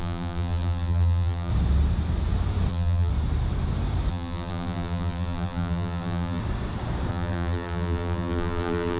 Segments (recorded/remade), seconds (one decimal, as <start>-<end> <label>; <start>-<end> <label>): 0.0-1.5 remade; 1.5-2.7 recorded; 2.7-3.1 remade; 3.1-4.1 recorded; 4.1-6.4 remade; 6.4-7.1 recorded; 7.1-9.0 remade